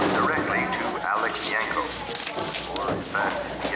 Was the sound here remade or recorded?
recorded